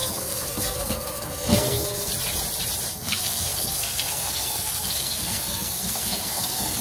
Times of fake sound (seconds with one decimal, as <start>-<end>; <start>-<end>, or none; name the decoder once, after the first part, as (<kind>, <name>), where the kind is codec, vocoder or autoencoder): 0.0-2.1 (codec, SNAC); 2.9-6.8